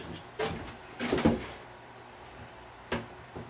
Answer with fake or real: real